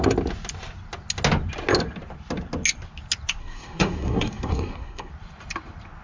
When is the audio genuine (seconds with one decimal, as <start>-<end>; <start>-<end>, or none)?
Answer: 0.0-3.4; 5.1-6.0